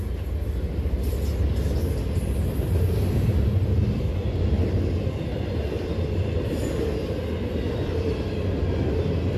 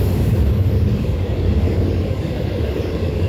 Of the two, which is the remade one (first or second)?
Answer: second